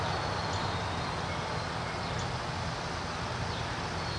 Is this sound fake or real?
real